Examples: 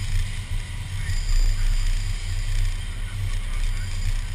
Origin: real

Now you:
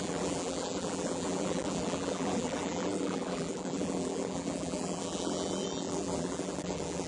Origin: fake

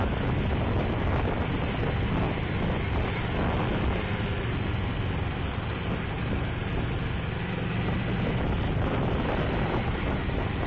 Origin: real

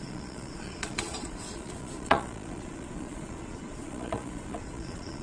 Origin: fake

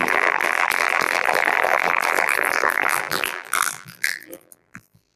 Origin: fake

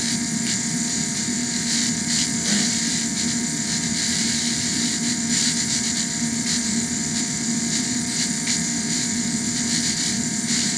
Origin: fake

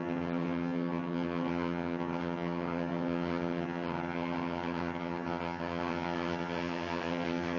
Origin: fake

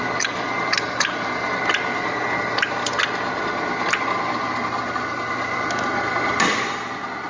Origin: real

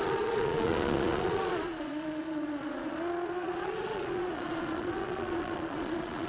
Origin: fake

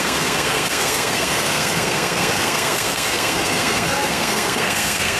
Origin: fake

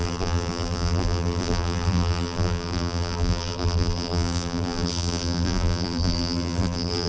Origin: fake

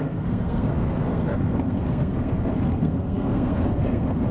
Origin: fake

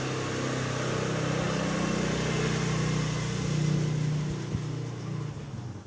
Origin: real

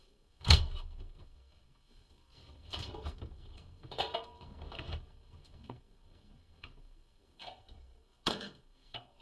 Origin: fake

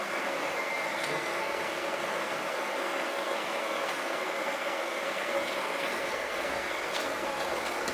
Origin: fake